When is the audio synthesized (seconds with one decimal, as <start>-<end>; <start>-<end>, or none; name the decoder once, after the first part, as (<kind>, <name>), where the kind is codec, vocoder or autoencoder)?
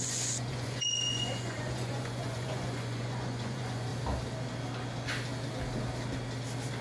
0.0-3.9 (vocoder, Vocos)